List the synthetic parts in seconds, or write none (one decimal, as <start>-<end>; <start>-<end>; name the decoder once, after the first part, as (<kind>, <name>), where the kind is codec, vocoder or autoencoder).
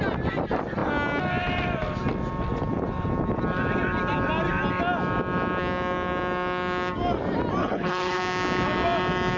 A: 7.6-8.2 (codec, HILCodec)